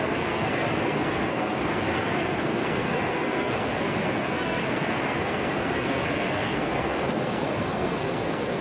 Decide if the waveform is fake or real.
fake